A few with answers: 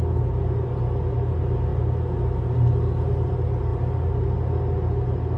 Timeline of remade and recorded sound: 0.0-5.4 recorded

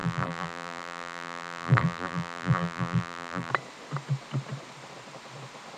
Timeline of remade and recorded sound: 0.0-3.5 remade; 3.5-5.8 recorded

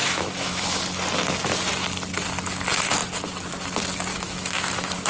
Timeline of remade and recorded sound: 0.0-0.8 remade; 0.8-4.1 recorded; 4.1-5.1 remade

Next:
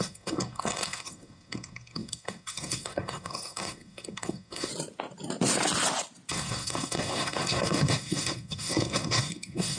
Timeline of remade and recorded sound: 0.0-4.7 remade; 4.7-6.3 recorded; 6.3-9.8 remade

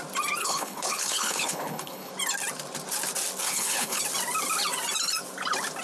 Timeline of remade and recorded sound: 0.0-0.4 recorded; 0.4-2.1 remade; 2.1-3.4 recorded; 3.4-4.0 remade; 4.0-5.8 recorded

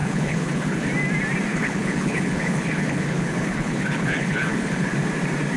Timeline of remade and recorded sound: 0.0-0.9 remade; 0.9-1.5 recorded; 1.5-4.9 remade; 4.9-5.6 recorded

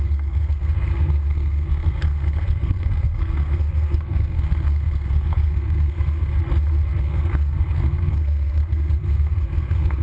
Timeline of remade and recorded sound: 0.0-6.4 remade; 6.4-7.0 recorded; 7.0-10.0 remade

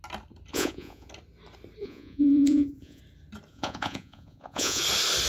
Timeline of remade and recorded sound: 0.0-0.5 recorded; 0.5-1.1 remade; 1.1-1.8 recorded; 1.8-3.0 remade; 3.0-3.5 recorded; 3.5-4.8 remade; 4.8-5.3 recorded